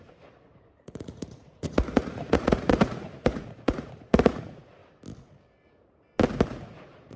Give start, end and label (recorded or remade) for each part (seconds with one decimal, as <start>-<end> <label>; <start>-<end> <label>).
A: 0.0-4.8 remade; 4.8-6.7 recorded; 6.7-7.2 remade